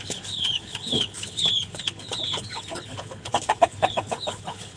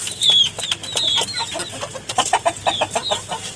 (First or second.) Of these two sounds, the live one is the second